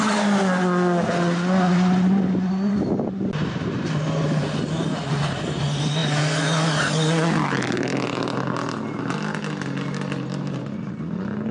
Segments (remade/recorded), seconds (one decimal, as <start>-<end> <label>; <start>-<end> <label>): 0.0-11.5 recorded

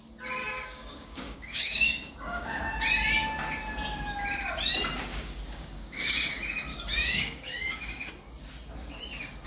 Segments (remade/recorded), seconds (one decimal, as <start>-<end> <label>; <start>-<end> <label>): 0.0-0.4 recorded; 0.4-2.6 remade; 2.6-5.1 recorded; 5.1-6.1 remade; 6.1-6.7 recorded; 6.7-8.1 remade; 8.1-9.5 recorded